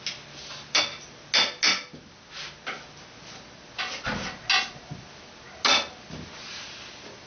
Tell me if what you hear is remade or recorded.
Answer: recorded